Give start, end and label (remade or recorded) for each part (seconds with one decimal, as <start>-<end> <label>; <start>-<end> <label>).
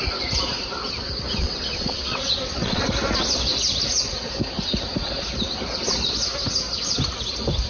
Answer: 0.0-1.4 recorded; 1.4-2.8 remade; 2.8-7.7 recorded